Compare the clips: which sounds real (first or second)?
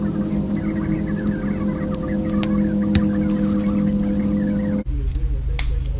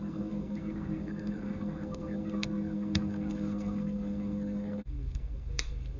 first